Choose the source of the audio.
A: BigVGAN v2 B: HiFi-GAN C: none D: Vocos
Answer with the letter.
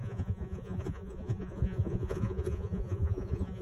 D